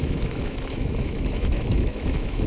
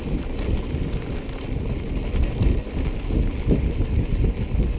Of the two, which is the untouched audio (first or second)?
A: second